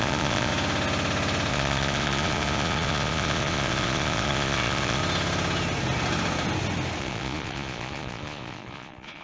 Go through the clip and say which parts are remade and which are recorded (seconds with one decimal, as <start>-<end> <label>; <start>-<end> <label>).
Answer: 0.0-0.5 remade; 0.5-1.5 recorded; 1.5-5.0 remade; 5.0-7.0 recorded; 7.0-9.2 remade